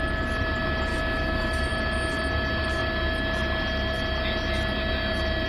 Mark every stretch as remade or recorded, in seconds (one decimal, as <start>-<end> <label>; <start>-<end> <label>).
0.0-0.9 recorded; 0.9-1.7 remade; 1.7-5.5 recorded